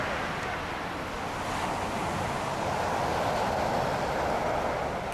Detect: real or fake real